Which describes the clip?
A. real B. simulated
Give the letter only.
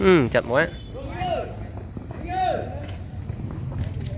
A